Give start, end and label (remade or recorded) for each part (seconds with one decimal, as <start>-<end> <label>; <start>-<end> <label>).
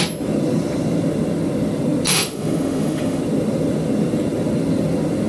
0.0-2.1 recorded; 2.1-3.2 remade; 3.2-5.3 recorded